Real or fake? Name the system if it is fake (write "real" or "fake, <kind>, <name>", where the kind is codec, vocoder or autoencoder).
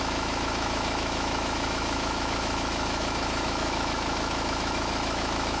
fake, autoencoder, DAC-VAE